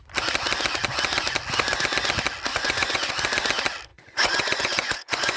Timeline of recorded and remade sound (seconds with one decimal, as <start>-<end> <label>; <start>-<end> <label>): 0.0-2.5 recorded; 2.5-3.1 remade; 3.1-3.9 recorded; 3.9-5.4 remade